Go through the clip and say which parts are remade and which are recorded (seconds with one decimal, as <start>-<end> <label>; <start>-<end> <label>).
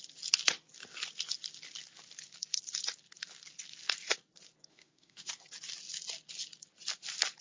0.0-4.7 recorded; 4.7-5.3 remade; 5.3-7.4 recorded